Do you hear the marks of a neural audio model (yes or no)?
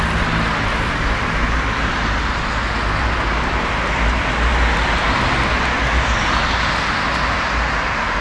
no